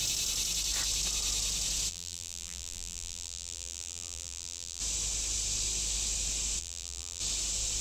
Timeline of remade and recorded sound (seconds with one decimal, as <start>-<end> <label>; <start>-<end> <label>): 0.0-1.9 recorded; 1.9-4.8 remade; 4.8-6.6 recorded; 6.6-7.2 remade; 7.2-7.8 recorded